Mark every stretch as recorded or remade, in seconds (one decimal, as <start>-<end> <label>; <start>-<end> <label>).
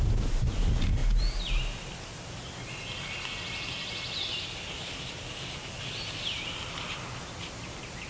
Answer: 0.0-8.1 recorded